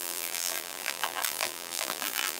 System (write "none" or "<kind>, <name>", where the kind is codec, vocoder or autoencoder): vocoder, BigVGAN v2